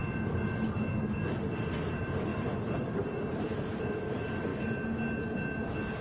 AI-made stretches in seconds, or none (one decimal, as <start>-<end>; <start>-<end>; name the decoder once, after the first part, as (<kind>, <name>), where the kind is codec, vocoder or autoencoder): 1.9-4.5 (vocoder, BigVGAN v2)